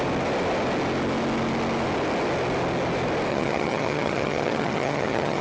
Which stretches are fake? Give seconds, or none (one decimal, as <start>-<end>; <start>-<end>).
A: 3.3-5.4